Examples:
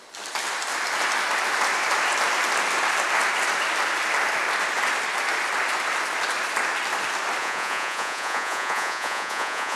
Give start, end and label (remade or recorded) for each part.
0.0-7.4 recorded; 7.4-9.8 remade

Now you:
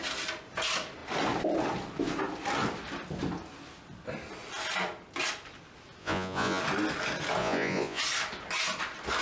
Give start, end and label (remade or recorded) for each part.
0.0-6.0 recorded; 6.0-6.6 remade; 6.6-7.4 recorded; 7.4-8.0 remade; 8.0-9.2 recorded

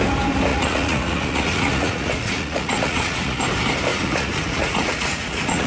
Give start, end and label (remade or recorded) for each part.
0.0-0.5 recorded; 0.5-3.4 remade; 3.4-3.9 recorded; 3.9-5.7 remade